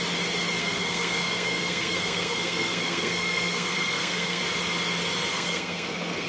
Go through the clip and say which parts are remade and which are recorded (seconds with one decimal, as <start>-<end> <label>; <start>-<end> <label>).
0.0-0.6 recorded; 0.6-4.4 remade; 4.4-5.3 recorded; 5.3-6.3 remade